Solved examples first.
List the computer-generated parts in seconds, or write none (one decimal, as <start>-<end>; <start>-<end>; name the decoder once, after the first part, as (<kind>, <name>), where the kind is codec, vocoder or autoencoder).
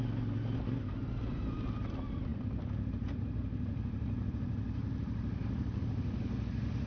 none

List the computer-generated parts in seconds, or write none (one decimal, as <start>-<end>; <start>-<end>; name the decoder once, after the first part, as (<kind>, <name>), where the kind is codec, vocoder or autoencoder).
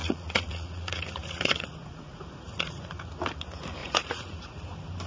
0.0-3.1 (vocoder, Vocos); 3.8-4.6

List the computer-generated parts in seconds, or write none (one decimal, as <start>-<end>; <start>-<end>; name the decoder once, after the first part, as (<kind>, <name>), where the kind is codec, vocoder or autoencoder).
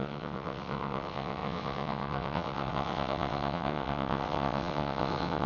0.0-5.5 (vocoder, WaveNeXt)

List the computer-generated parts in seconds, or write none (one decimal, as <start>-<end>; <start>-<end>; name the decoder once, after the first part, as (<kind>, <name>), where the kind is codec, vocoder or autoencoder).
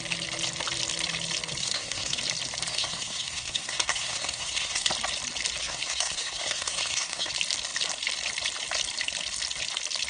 1.6-2.2 (codec, SNAC); 2.7-4.9; 5.6-7.3